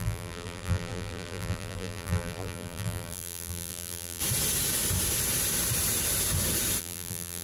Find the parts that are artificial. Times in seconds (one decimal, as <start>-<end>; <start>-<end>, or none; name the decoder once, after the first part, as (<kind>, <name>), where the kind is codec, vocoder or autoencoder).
0.0-4.2 (vocoder, BigVGAN v2); 6.8-7.4